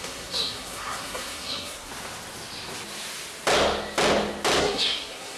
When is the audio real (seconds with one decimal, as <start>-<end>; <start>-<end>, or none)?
1.9-4.6